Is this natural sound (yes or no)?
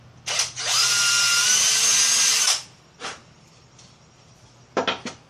yes